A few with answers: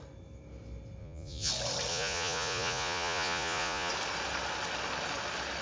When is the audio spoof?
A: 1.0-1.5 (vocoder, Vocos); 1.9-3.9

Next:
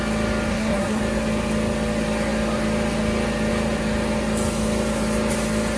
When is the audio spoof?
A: 0.5-1.0 (codec, SNAC)

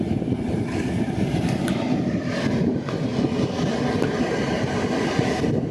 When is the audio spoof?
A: none

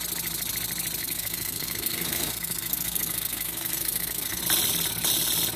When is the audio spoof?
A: 1.0-4.4 (codec, SNAC)

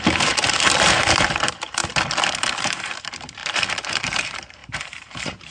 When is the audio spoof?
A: 0.0-1.8 (vocoder, BigVGAN v2); 2.6-5.5

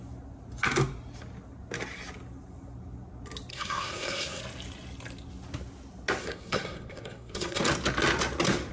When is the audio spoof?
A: 3.5-4.4 (codec, SNAC); 6.2-7.6